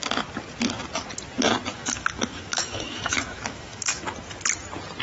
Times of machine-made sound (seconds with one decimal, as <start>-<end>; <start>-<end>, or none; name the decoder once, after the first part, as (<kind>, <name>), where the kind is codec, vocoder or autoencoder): 1.7-4.0 (autoencoder, DAC-VAE)